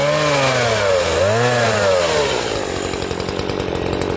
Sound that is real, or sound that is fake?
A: real